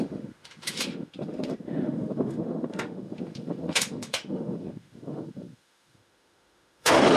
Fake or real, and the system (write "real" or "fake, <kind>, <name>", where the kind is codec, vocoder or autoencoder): fake, autoencoder, DAC-VAE